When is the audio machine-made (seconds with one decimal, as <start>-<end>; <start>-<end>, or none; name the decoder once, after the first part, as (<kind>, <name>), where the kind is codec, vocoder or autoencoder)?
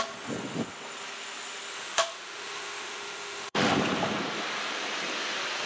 1.7-3.7 (autoencoder, DAC-VAE)